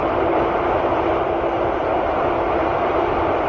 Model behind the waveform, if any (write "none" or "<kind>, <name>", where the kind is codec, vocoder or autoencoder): vocoder, BigVGAN v2